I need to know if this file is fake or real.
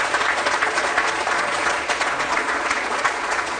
fake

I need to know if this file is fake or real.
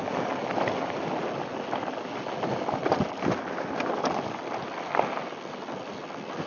real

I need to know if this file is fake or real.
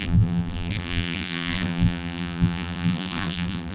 fake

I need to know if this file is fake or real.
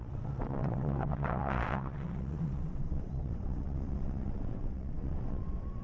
fake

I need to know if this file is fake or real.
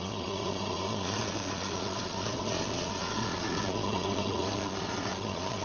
fake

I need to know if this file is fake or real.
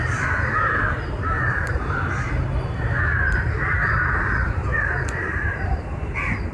fake